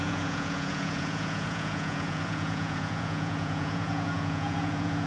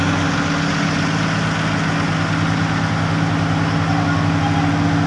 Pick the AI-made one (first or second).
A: first